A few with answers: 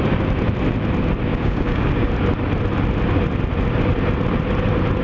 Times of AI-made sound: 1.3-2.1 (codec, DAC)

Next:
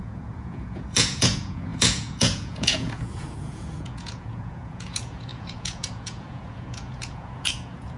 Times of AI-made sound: 0.0-8.0 (vocoder, Vocos)

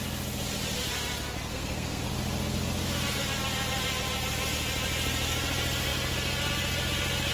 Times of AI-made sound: 1.5-2.0 (codec, SNAC)